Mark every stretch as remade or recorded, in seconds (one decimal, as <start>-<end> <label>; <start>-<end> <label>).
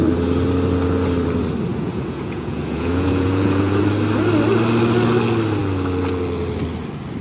0.0-1.7 recorded; 1.7-3.8 remade; 3.8-7.2 recorded